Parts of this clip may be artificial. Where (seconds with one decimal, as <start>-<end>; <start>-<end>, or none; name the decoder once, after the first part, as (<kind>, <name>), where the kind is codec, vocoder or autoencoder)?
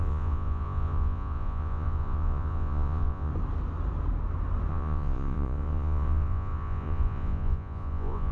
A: 0.0-3.3 (vocoder, Vocos); 4.7-8.3